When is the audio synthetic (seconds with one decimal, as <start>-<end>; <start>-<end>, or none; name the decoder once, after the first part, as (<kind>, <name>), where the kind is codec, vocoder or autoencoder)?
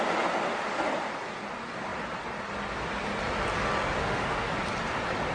4.0-4.5 (autoencoder, DAC-VAE)